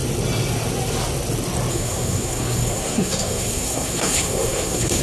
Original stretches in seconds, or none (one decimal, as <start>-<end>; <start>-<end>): 0.0-1.7